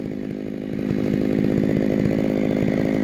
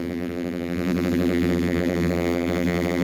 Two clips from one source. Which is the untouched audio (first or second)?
first